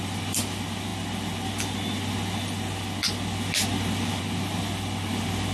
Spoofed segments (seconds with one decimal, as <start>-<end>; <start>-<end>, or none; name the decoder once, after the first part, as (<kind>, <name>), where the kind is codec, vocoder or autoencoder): none